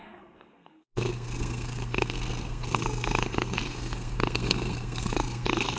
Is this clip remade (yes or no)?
yes